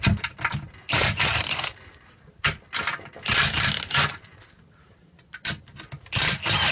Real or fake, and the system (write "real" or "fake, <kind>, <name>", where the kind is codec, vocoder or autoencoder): real